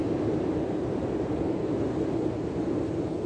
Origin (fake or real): real